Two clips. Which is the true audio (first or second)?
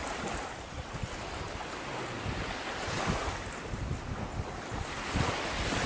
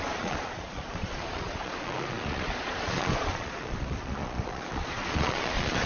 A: first